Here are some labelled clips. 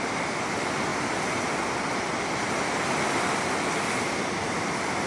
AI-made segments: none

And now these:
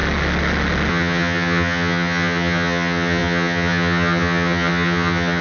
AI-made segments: 0.9-5.4 (vocoder, HiFi-GAN)

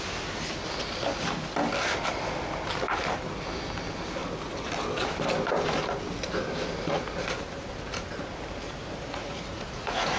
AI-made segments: 9.2-10.2 (vocoder, Vocos)